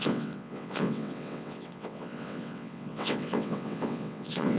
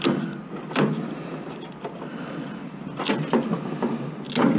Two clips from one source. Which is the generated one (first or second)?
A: first